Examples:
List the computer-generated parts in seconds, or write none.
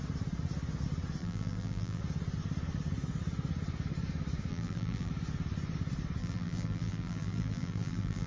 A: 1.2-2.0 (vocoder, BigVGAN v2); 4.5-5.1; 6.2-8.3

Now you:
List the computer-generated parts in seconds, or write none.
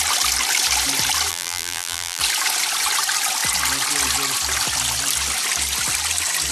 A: 1.3-2.2 (vocoder, BigVGAN v2)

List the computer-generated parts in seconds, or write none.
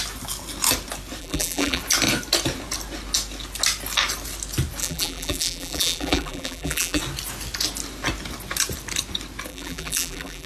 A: 1.2-1.8 (vocoder, BigVGAN v2); 4.8-7.0; 9.5-10.5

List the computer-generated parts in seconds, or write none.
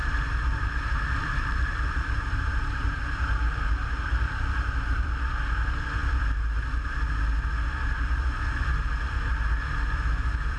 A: 0.0-5.1 (vocoder, BigVGAN v2)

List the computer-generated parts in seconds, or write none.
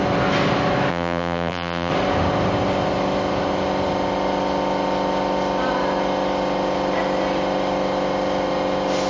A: 0.9-1.9 (vocoder, BigVGAN v2)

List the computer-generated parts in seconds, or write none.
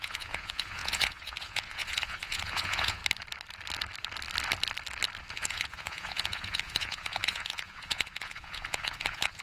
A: 0.0-3.0 (vocoder, Vocos); 5.3-9.4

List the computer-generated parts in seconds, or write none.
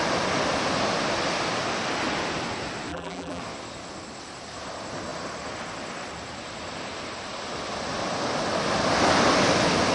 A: 2.9-3.4 (vocoder, BigVGAN v2)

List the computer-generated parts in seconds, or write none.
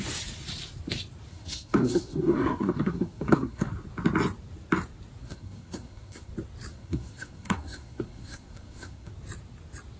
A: 1.3-3.7 (codec, SNAC); 5.2-6.3; 6.7-9.1